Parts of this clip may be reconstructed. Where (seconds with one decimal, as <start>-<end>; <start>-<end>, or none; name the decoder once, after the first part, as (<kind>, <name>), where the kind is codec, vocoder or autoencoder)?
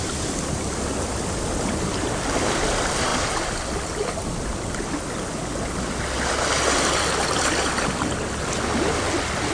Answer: none